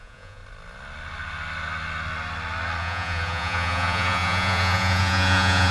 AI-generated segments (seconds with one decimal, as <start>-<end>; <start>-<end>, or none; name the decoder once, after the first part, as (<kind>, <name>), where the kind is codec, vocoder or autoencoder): 0.0-0.4 (vocoder, Vocos); 2.8-5.7